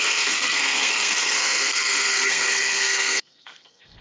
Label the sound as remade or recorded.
remade